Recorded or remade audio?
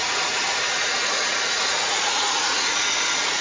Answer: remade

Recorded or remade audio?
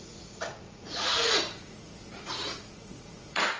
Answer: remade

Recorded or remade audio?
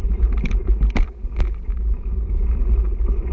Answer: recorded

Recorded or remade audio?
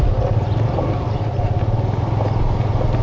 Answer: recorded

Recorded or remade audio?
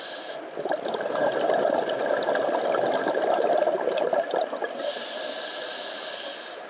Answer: recorded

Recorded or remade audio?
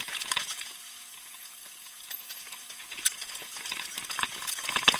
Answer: remade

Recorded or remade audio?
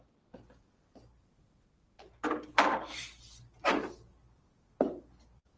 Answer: recorded